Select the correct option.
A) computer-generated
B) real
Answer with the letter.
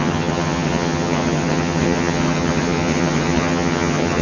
A